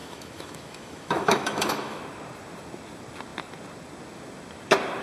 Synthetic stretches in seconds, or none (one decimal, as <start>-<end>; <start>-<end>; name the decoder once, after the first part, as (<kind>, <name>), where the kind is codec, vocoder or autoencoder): 0.0-2.0 (autoencoder, DAC-VAE)